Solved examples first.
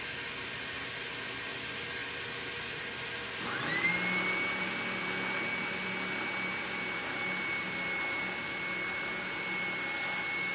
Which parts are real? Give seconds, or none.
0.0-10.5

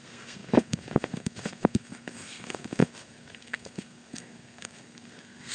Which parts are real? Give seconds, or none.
none

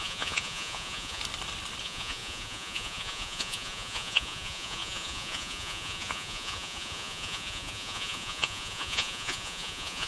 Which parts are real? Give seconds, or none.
1.2-1.8